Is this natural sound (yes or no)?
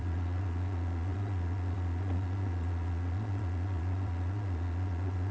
no